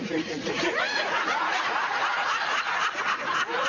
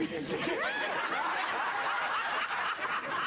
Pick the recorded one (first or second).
second